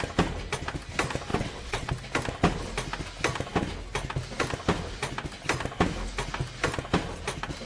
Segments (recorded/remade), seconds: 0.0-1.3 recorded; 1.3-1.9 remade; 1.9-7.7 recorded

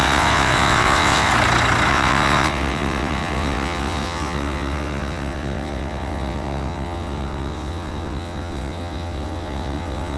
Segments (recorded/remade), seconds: 0.0-1.3 remade; 1.3-1.9 recorded; 1.9-10.2 remade

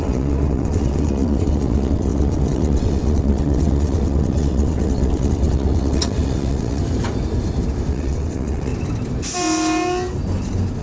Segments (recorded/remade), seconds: 0.0-6.8 remade; 6.8-7.9 recorded; 7.9-8.7 remade; 8.7-10.8 recorded

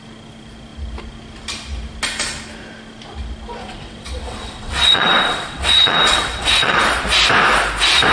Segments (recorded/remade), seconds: 0.0-3.6 recorded; 3.6-6.8 remade; 6.8-8.1 recorded

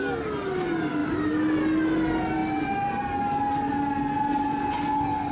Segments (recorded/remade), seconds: 0.0-5.3 recorded

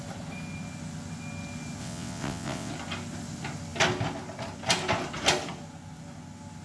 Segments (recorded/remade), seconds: 0.0-1.8 recorded; 1.8-2.7 remade; 2.7-6.6 recorded

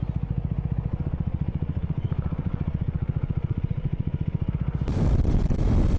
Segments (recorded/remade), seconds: 0.0-0.9 recorded; 0.9-4.5 remade; 4.5-6.0 recorded

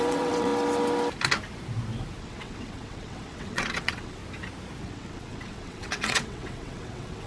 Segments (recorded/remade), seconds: 0.0-0.5 remade; 0.5-2.2 recorded; 2.2-4.2 remade; 4.2-4.8 recorded; 4.8-7.3 remade